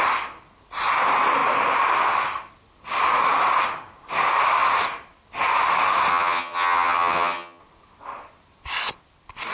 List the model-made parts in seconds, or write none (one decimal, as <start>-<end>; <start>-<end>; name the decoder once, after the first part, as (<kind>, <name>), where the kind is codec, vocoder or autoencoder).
6.1-7.6 (vocoder, HiFi-GAN)